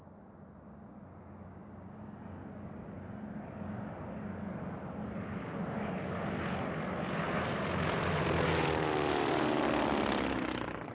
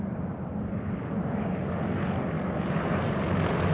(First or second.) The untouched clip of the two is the first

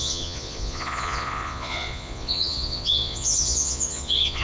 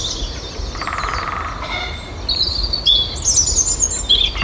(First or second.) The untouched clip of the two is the second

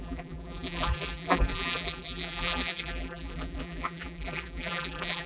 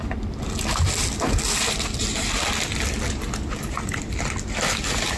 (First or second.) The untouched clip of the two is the second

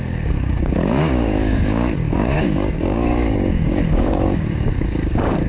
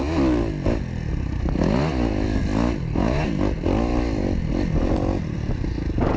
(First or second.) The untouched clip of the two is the second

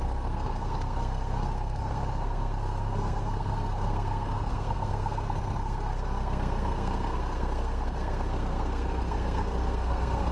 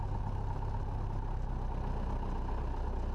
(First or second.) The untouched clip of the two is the second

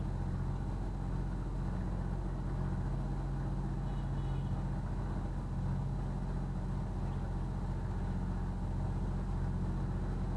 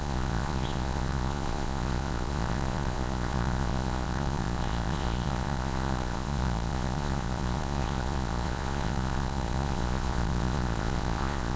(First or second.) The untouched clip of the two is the first